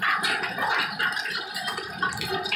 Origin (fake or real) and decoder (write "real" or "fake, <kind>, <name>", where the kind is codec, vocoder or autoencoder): real